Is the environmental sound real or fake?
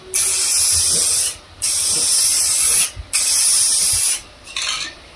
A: real